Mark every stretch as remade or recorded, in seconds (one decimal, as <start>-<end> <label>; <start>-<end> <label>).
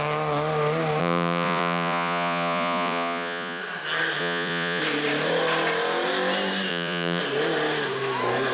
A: 0.0-1.0 recorded; 1.0-3.6 remade; 3.6-4.2 recorded; 4.2-4.8 remade; 4.8-6.7 recorded; 6.7-7.2 remade; 7.2-8.5 recorded